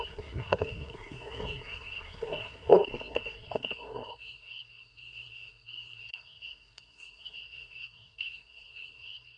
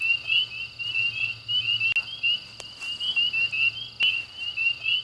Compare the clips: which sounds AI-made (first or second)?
first